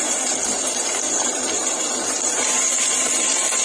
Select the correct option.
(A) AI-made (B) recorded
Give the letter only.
A